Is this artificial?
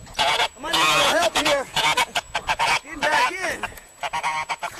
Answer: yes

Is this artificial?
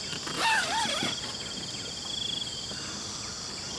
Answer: no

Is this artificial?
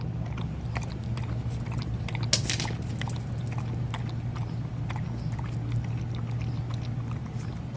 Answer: no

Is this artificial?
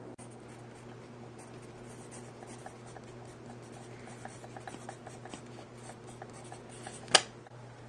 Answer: no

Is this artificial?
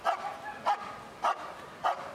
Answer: no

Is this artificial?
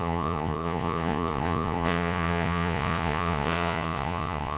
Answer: yes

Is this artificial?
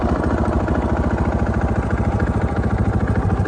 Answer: no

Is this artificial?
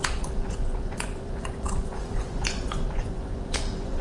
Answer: yes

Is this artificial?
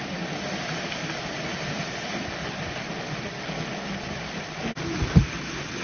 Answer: no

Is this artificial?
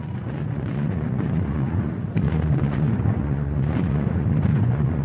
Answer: yes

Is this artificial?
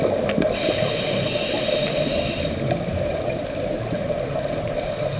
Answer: no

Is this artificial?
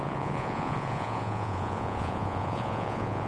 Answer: yes